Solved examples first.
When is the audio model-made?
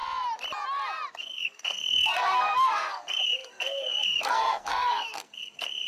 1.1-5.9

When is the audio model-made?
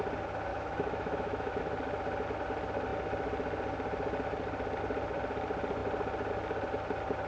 0.5-1.6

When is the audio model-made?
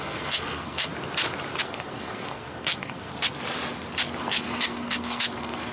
0.0-0.9; 1.6-3.1; 4.2-5.7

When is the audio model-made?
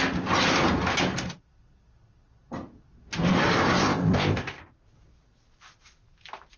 3.8-4.6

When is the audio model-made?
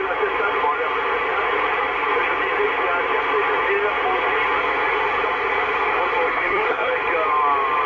6.3-6.9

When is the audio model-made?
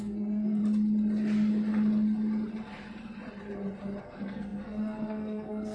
0.0-0.6; 4.0-5.7